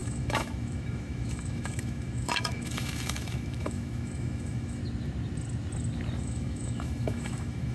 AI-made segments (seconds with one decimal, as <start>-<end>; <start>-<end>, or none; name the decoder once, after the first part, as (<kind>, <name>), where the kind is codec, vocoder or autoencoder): 0.0-4.8 (autoencoder, DAC-VAE); 6.2-7.7